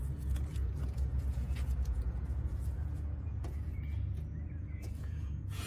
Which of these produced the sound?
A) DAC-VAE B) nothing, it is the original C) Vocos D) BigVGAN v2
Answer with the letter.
C